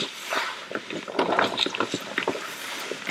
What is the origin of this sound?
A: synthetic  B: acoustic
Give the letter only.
B